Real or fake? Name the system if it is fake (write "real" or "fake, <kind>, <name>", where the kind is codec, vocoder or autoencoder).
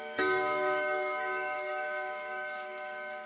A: fake, codec, DAC